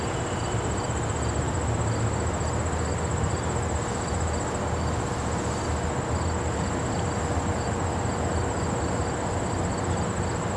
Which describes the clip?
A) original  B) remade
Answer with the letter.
A